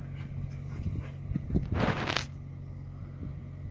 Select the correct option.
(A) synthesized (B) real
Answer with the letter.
B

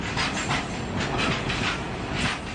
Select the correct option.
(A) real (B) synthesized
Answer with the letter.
A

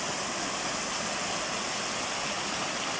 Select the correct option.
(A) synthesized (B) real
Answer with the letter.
B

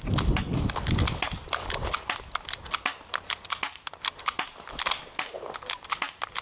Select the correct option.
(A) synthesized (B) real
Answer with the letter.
B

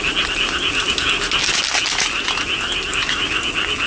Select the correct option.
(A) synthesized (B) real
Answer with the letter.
B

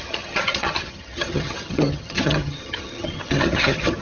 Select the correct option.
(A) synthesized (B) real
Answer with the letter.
A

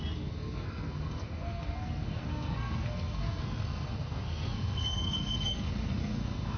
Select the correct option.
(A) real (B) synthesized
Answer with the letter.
B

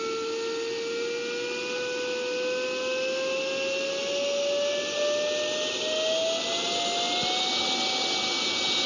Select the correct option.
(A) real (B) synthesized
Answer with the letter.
A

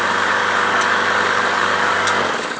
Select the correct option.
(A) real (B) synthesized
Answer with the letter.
B